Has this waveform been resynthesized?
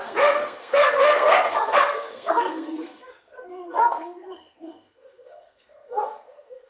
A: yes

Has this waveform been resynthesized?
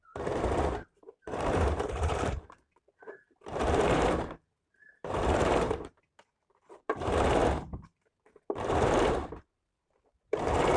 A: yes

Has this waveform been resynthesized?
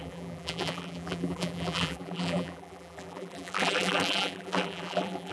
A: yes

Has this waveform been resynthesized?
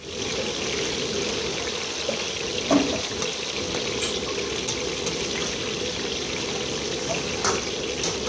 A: no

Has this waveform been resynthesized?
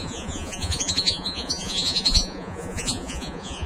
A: yes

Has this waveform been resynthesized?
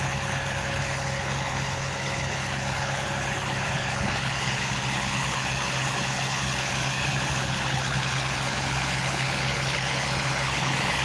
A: yes